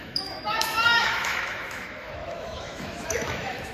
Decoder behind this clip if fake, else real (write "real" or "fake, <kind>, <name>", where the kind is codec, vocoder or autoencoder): fake, autoencoder, DAC-VAE